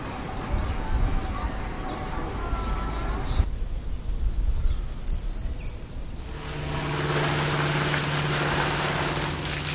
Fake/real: real